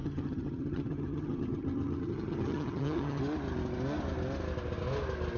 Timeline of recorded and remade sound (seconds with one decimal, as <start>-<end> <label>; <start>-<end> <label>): 0.0-3.2 remade; 3.2-5.4 recorded